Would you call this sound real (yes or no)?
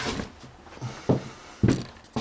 yes